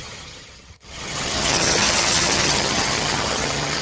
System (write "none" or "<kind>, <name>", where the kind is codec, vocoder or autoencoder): vocoder, HiFi-GAN